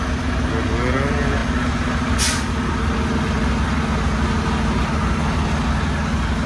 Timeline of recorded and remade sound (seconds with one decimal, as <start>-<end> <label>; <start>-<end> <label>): 0.0-6.5 recorded